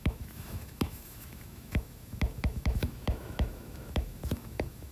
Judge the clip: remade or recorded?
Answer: remade